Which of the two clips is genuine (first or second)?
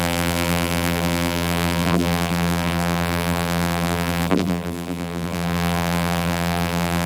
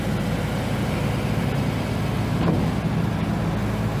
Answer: second